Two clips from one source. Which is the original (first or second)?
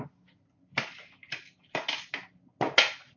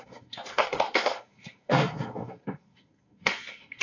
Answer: first